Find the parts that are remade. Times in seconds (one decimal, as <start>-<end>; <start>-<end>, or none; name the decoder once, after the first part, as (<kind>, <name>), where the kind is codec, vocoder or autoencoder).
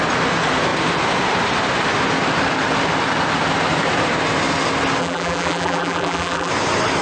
5.0-6.5 (vocoder, BigVGAN v2)